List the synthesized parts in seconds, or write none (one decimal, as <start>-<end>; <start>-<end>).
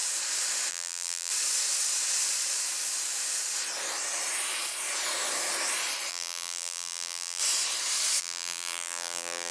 0.7-1.3; 6.1-7.4; 8.2-9.5